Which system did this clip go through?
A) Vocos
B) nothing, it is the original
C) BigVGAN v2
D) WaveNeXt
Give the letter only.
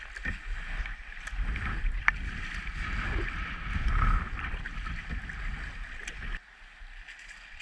B